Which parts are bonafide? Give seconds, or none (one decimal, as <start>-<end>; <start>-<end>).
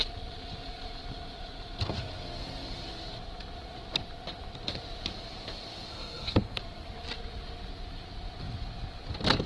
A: 0.0-5.9; 6.6-9.5